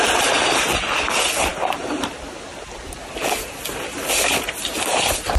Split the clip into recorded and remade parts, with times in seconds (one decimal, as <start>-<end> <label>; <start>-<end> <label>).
0.0-5.4 recorded